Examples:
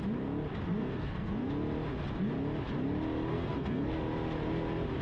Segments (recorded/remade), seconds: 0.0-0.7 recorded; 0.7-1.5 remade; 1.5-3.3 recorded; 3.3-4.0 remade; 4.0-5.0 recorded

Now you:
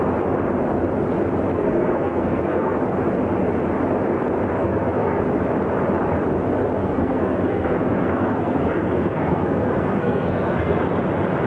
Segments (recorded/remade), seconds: 0.0-1.5 recorded; 1.5-2.8 remade; 2.8-4.6 recorded; 4.6-5.2 remade; 5.2-6.8 recorded; 6.8-10.8 remade; 10.8-11.5 recorded

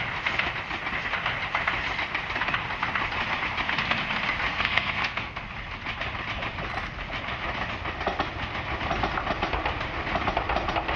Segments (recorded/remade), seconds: 0.0-4.5 recorded; 4.5-5.4 remade; 5.4-11.0 recorded

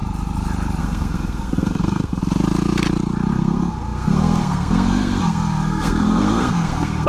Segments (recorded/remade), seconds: 0.0-0.8 recorded; 0.8-2.2 remade; 2.2-3.3 recorded; 3.3-7.1 remade

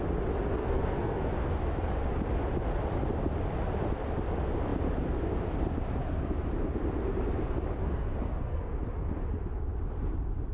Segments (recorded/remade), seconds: 0.0-0.6 recorded; 0.6-1.3 remade; 1.3-7.8 recorded; 7.8-8.6 remade; 8.6-10.5 recorded

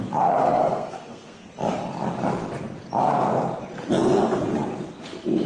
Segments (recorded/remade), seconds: 0.0-0.6 recorded; 0.6-1.5 remade; 1.5-5.5 recorded

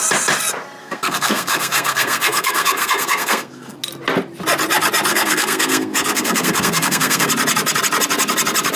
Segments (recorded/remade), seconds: 0.0-0.8 recorded; 0.8-3.8 remade; 3.8-5.1 recorded; 5.1-7.3 remade; 7.3-8.8 recorded

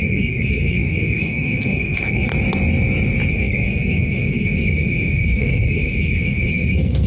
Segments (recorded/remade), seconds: 0.0-2.3 remade; 2.3-3.3 recorded; 3.3-7.1 remade